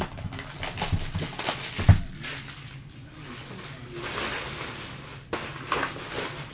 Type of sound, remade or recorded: recorded